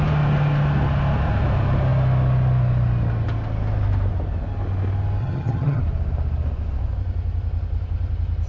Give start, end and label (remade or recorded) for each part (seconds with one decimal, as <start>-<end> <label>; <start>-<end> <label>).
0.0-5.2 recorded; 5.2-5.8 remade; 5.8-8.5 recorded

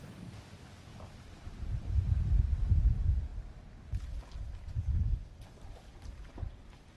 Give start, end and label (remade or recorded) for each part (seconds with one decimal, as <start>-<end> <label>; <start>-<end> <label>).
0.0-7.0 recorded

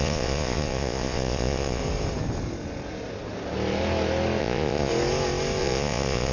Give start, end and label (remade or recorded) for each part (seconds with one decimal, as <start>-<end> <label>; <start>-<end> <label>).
0.0-1.8 remade; 1.8-4.4 recorded; 4.4-4.9 remade; 4.9-5.6 recorded; 5.6-6.3 remade